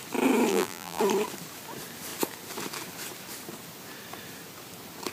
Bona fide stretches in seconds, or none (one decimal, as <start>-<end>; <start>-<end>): 0.0-0.5; 1.0-5.1